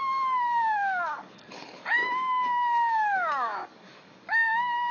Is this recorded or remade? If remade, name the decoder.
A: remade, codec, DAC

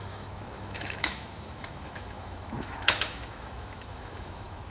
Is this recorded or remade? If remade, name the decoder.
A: remade, autoencoder, DAC-VAE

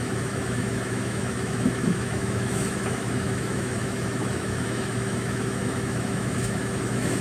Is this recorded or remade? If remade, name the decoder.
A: remade, autoencoder, DAC-VAE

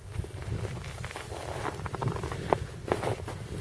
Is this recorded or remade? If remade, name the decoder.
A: recorded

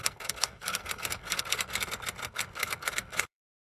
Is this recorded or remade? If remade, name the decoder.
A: remade, codec, SNAC